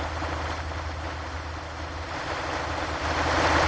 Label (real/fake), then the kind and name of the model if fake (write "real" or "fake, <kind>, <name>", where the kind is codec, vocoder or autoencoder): real